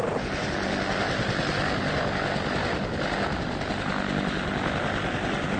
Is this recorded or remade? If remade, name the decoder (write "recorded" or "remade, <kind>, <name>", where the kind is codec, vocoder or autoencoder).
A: recorded